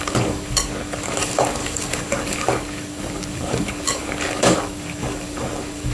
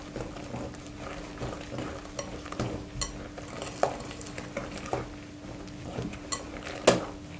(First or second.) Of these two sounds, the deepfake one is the first